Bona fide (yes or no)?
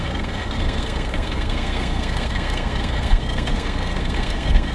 no